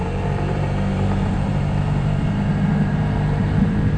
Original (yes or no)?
no